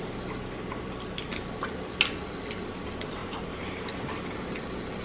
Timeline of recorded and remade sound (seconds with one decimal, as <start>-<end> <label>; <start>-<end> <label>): 0.0-5.0 recorded